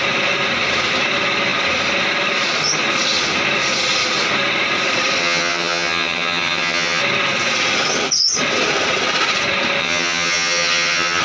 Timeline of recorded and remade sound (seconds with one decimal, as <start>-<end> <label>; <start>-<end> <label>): 0.0-5.2 recorded; 5.2-7.0 remade; 7.0-9.8 recorded; 9.8-11.2 remade